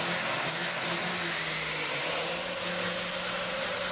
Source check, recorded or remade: recorded